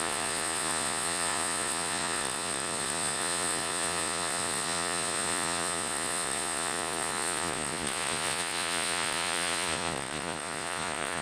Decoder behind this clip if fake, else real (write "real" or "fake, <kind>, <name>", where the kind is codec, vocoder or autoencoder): fake, vocoder, Vocos